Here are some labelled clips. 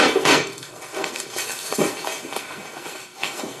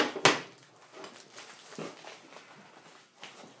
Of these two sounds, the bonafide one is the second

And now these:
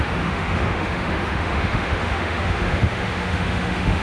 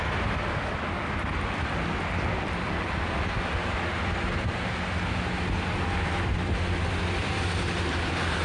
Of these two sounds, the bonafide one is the second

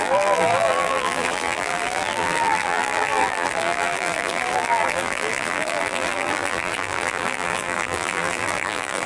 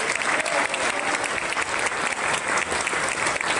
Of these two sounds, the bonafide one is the second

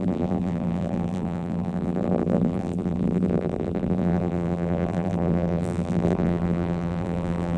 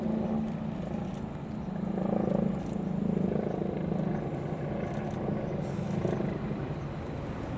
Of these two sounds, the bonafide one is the second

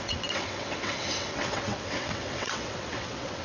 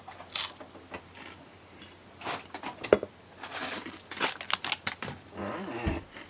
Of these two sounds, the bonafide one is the second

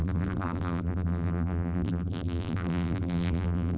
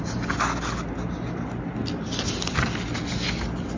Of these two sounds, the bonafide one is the second